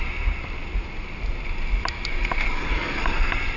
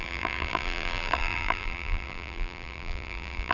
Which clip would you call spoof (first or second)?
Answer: second